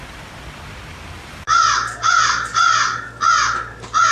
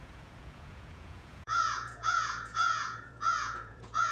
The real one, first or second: first